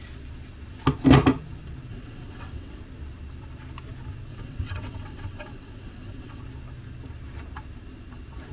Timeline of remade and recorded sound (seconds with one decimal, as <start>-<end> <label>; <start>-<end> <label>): 0.0-1.9 recorded; 1.9-2.8 remade; 2.8-4.3 recorded; 4.3-6.4 remade; 6.4-8.5 recorded